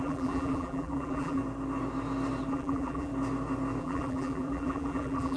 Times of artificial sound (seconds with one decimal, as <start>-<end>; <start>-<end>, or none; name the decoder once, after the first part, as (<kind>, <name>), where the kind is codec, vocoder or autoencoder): 0.0-1.4 (vocoder, BigVGAN v2); 2.5-3.1; 3.8-5.4